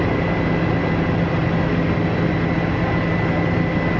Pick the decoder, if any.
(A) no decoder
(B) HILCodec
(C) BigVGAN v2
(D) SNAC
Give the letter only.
A